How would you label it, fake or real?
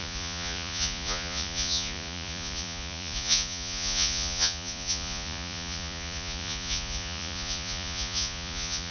fake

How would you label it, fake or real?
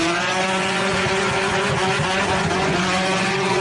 fake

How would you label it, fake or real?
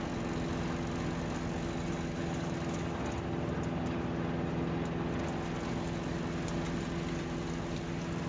real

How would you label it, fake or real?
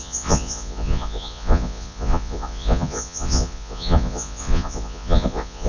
fake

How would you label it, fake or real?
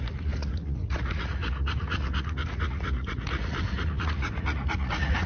fake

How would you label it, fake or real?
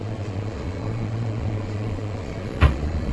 fake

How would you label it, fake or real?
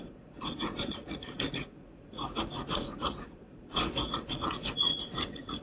fake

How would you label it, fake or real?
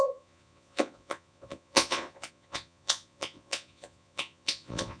fake